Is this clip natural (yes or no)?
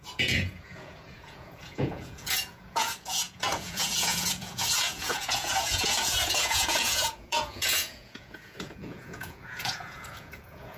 no